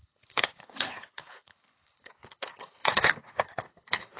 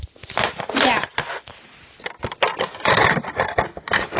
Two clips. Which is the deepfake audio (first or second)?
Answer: first